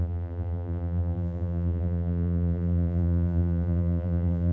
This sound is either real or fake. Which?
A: fake